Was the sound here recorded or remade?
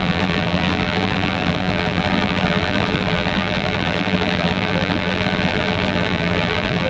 remade